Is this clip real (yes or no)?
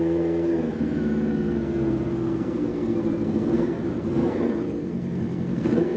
no